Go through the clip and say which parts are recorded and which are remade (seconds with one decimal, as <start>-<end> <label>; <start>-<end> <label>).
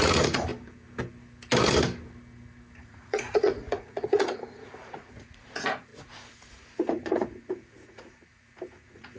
0.0-0.5 remade; 0.5-2.8 recorded; 2.8-9.2 remade